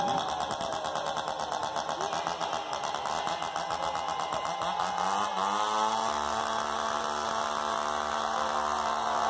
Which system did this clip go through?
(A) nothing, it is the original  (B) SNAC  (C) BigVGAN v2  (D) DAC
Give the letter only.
A